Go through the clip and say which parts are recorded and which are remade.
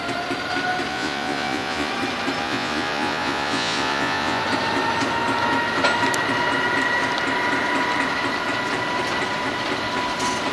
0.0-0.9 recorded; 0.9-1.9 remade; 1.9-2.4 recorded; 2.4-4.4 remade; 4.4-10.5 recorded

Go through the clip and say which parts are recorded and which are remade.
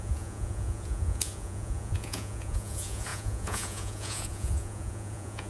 0.0-5.5 remade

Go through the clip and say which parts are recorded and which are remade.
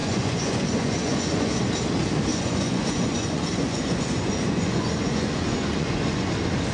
0.0-1.6 remade; 1.6-2.3 recorded; 2.3-6.3 remade; 6.3-6.7 recorded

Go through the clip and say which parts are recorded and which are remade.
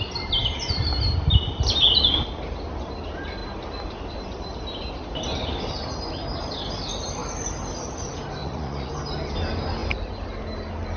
0.0-8.4 recorded; 8.4-8.9 remade; 8.9-11.0 recorded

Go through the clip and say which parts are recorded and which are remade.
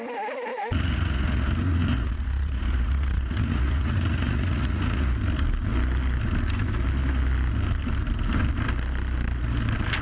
0.0-0.5 recorded; 0.5-5.1 remade; 5.1-10.0 recorded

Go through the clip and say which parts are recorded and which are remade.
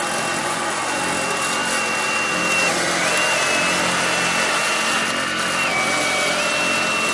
0.0-0.4 recorded; 0.4-1.0 remade; 1.0-7.1 recorded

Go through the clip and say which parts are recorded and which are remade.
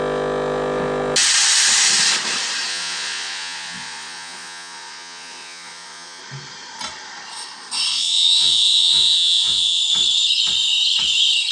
0.0-2.7 recorded; 2.7-6.2 remade; 6.2-7.9 recorded; 7.9-9.8 remade; 9.8-11.5 recorded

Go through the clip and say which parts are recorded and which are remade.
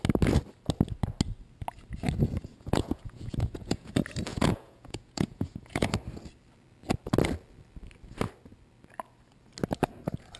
0.0-2.5 recorded; 2.5-3.9 remade; 3.9-4.3 recorded; 4.3-5.9 remade; 5.9-10.4 recorded